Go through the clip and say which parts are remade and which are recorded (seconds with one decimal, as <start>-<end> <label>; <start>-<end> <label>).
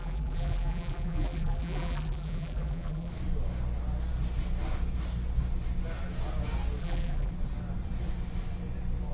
0.0-3.1 remade; 3.1-6.8 recorded; 6.8-7.3 remade; 7.3-9.1 recorded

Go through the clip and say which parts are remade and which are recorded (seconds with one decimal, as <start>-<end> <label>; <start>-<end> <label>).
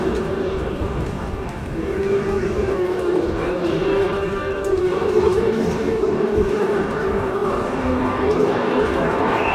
0.0-9.5 remade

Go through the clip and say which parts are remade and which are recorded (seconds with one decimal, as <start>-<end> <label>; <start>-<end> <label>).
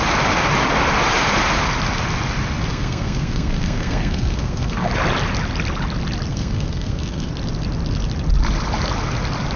0.0-2.7 recorded; 2.7-4.9 remade; 4.9-6.3 recorded; 6.3-7.3 remade; 7.3-9.6 recorded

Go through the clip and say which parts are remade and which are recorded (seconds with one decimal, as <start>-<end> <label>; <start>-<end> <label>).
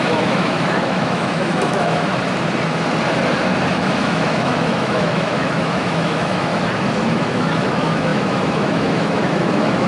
0.0-2.1 remade; 2.1-3.7 recorded; 3.7-6.5 remade; 6.5-7.1 recorded; 7.1-9.9 remade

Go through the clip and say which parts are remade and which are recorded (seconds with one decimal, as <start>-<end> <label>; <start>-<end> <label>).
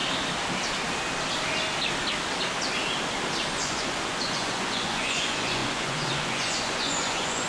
0.0-3.6 recorded; 3.6-7.5 remade